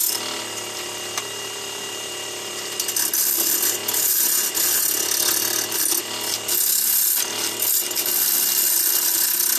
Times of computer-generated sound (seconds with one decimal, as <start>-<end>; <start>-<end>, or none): none